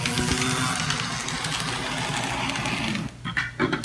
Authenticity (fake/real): real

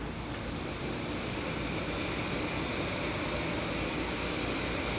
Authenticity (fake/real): real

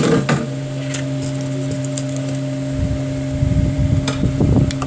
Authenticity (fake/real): fake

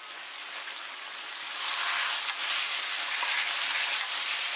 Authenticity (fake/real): real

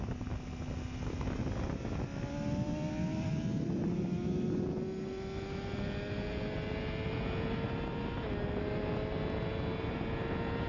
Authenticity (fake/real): real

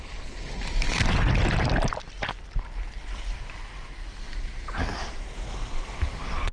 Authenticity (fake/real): real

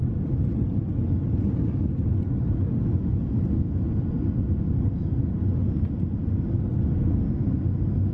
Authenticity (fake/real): real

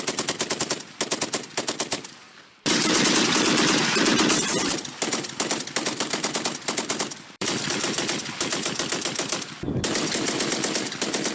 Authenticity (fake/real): fake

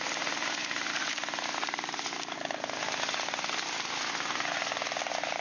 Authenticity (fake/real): real